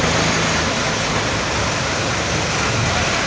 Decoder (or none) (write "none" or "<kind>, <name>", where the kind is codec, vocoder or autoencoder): none